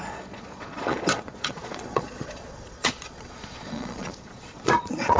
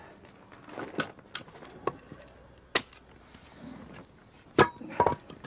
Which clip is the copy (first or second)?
first